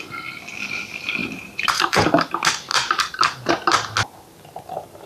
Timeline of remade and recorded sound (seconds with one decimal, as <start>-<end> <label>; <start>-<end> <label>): 0.0-1.2 recorded; 1.2-2.0 remade; 2.0-2.7 recorded; 2.7-3.2 remade; 3.2-5.1 recorded